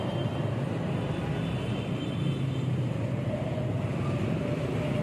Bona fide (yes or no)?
yes